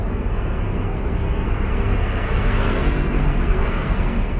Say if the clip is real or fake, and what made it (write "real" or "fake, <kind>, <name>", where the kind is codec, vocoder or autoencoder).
fake, codec, SNAC